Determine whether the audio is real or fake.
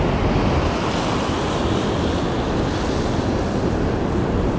real